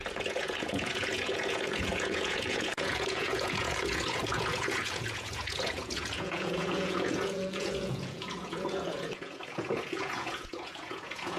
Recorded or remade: remade